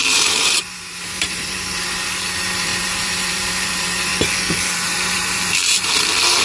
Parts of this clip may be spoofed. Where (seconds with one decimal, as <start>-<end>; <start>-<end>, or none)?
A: 0.0-4.1; 4.6-6.4